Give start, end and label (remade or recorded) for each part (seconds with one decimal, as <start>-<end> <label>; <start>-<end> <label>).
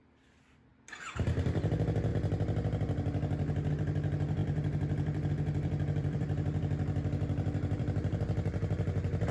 0.0-0.7 remade; 0.7-1.4 recorded; 1.4-2.1 remade; 2.1-3.7 recorded; 3.7-9.3 remade